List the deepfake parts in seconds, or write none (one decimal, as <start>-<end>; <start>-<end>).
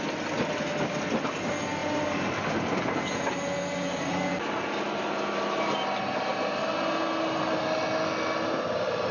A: none